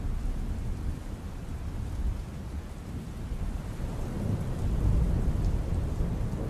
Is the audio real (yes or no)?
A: yes